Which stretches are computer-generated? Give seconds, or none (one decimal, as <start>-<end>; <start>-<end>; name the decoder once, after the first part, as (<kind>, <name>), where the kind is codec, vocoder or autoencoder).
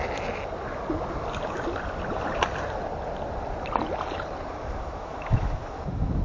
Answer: 4.5-6.2 (autoencoder, DAC-VAE)